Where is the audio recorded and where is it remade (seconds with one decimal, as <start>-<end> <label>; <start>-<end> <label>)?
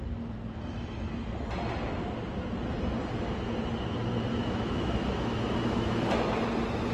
0.0-4.4 recorded; 4.4-6.4 remade; 6.4-6.9 recorded